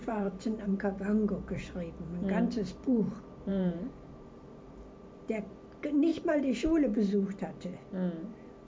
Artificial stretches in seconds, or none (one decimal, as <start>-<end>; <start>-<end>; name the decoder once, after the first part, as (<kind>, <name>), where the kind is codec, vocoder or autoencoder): 0.0-0.8 (vocoder, BigVGAN v2); 3.5-5.5; 6.1-6.6